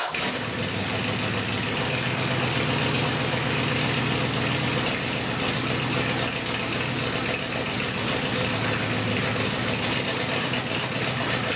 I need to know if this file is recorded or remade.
recorded